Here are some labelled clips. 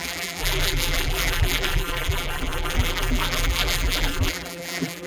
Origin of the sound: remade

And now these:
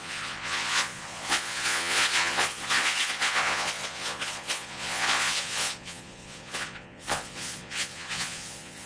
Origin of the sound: remade